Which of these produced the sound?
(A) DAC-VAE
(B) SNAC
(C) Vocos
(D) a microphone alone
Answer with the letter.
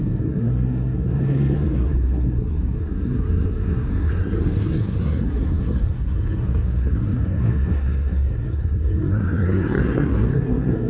B